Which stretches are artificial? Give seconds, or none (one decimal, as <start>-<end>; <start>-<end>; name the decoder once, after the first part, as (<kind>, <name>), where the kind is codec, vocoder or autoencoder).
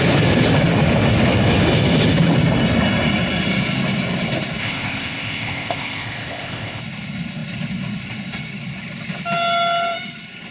4.6-6.8 (codec, ZipCodec)